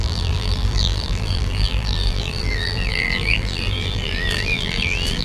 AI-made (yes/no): yes